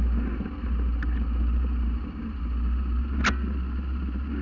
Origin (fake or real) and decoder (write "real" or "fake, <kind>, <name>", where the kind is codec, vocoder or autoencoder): real